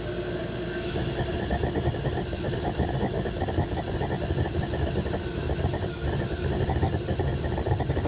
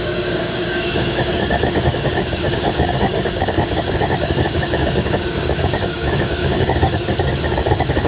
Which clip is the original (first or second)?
first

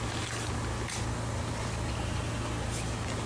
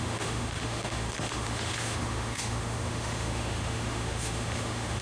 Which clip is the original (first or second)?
first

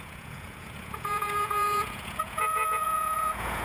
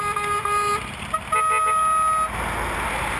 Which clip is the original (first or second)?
second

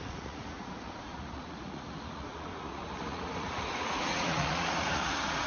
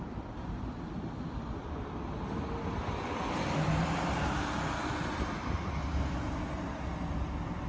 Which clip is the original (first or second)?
second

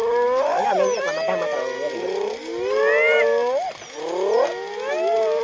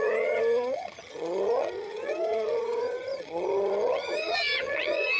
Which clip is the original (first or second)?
first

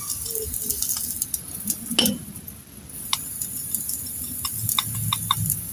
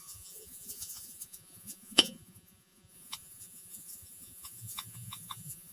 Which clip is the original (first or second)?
first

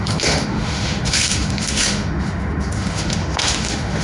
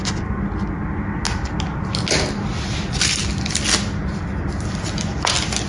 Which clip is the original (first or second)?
second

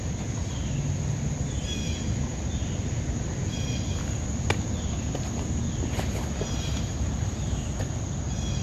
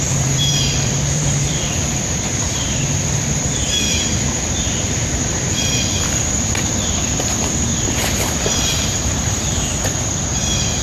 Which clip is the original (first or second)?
first